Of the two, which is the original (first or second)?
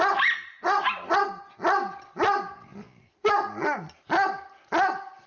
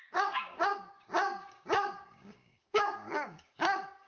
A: first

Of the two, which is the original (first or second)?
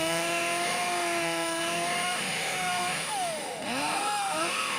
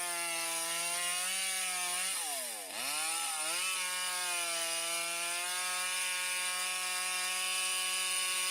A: second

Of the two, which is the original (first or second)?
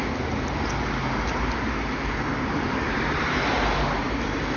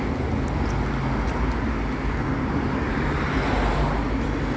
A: second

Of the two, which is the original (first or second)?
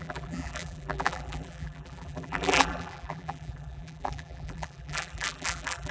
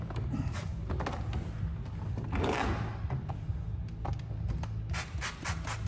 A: second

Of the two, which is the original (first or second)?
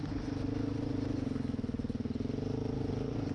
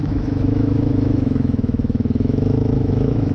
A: first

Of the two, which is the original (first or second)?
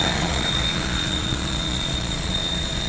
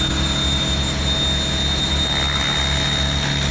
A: second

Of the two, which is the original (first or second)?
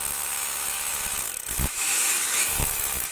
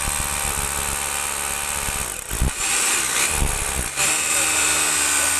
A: second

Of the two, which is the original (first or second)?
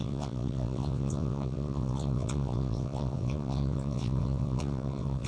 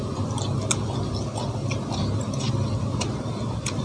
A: second